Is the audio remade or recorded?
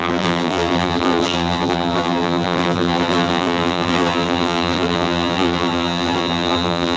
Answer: remade